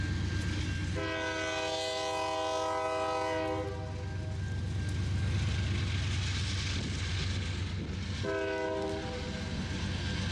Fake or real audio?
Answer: real